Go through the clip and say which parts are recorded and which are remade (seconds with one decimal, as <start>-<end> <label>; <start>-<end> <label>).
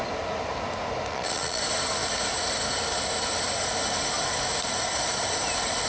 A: 0.0-1.1 recorded; 1.1-1.6 remade; 1.6-5.9 recorded